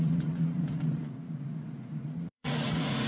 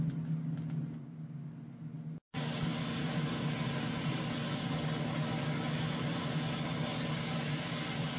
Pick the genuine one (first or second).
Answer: second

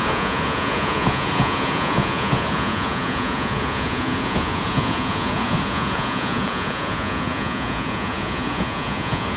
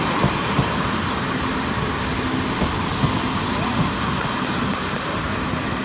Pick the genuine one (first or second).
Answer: second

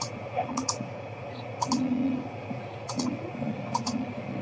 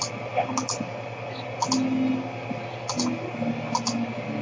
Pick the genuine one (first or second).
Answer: second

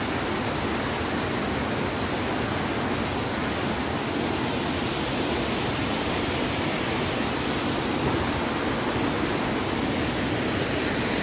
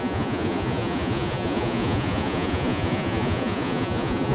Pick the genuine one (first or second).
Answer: first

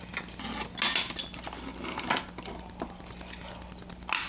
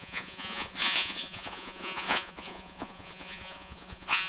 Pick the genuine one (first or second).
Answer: first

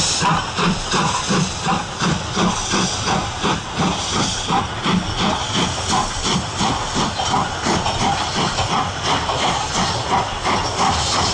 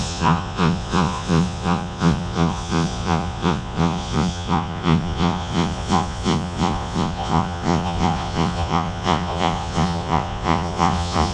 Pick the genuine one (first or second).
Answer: first